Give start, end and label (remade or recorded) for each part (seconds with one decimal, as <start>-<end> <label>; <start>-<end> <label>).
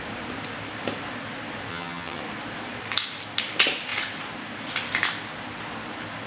0.0-1.7 recorded; 1.7-2.2 remade; 2.2-6.3 recorded